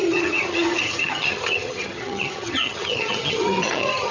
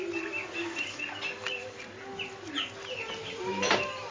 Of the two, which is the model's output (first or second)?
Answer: first